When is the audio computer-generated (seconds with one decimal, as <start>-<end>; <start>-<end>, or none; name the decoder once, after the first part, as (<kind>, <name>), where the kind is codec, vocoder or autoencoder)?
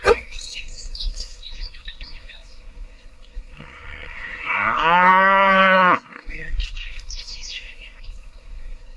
0.0-9.0 (codec, SNAC)